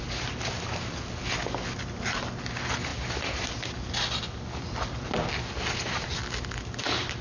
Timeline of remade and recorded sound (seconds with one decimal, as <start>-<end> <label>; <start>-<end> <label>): 0.0-7.2 recorded